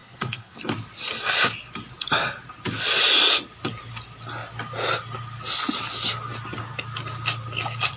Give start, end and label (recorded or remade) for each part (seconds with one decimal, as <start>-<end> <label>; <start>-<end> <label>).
0.0-0.6 remade; 0.6-8.0 recorded